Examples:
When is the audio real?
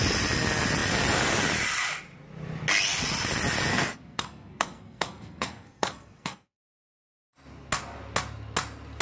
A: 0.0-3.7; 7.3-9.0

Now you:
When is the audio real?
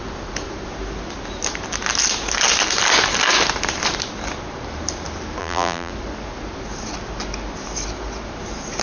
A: 0.0-5.4; 5.9-8.8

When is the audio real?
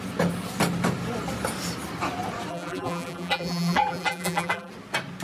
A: 0.0-2.5; 4.7-5.2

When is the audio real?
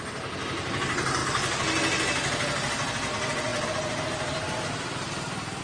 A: 0.0-3.5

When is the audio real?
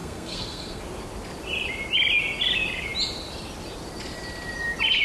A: 0.8-5.0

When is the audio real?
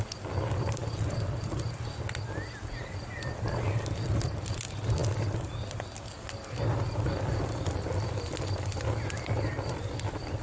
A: 0.0-6.7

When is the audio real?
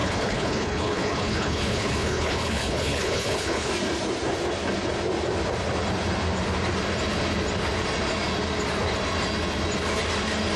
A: 3.7-10.6